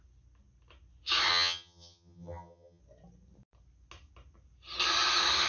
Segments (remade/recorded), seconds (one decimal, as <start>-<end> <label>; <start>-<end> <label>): 0.0-1.3 recorded; 1.3-2.8 remade; 2.8-5.5 recorded